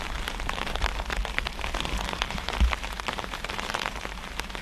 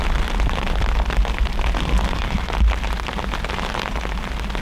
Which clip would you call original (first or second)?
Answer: second